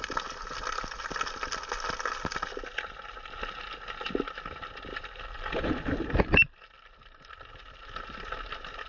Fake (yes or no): yes